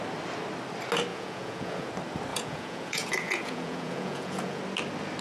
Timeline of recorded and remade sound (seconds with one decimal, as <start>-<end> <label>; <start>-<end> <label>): 0.0-1.1 recorded; 1.1-1.9 remade; 1.9-2.3 recorded; 2.3-4.6 remade; 4.6-5.2 recorded